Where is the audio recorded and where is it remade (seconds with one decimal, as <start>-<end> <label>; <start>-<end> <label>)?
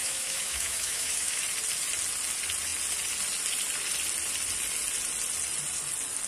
0.0-1.4 remade; 1.4-6.3 recorded